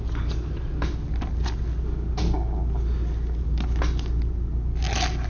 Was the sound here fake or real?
real